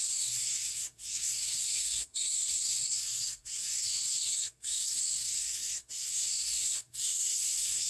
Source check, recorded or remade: remade